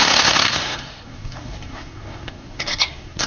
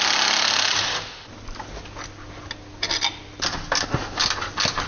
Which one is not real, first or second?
first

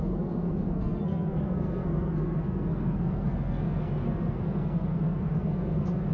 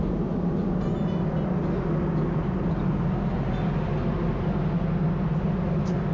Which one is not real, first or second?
first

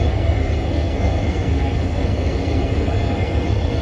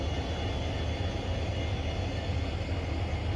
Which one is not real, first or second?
first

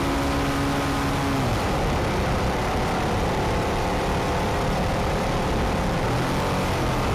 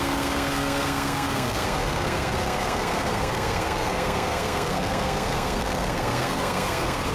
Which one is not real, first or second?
second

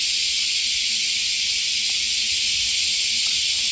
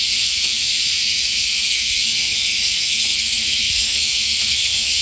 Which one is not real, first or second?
second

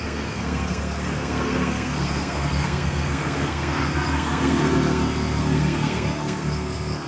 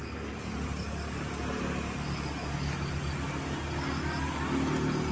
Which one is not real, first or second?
first